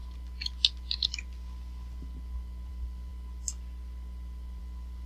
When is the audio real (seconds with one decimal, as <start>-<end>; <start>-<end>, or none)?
0.0-2.7; 3.1-4.6